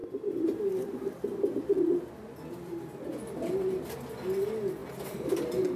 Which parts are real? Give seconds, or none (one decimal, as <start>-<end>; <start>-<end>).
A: 0.0-5.8